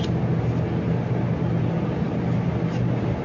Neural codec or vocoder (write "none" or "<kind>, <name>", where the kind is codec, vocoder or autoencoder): none